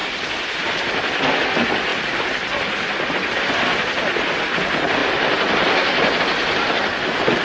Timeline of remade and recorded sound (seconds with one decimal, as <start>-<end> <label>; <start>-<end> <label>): 0.0-7.4 recorded